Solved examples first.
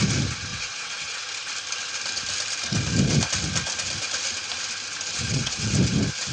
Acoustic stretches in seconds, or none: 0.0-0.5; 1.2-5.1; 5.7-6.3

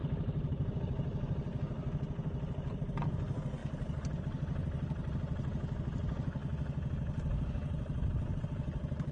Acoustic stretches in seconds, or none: 0.8-9.1

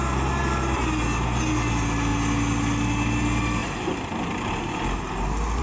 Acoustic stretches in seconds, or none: 0.0-5.6

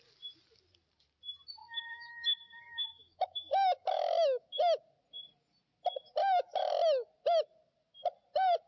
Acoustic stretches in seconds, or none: 0.0-1.6; 4.8-6.2; 6.7-8.7